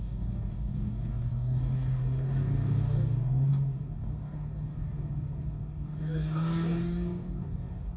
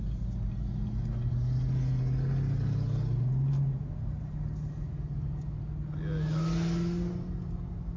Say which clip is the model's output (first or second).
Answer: first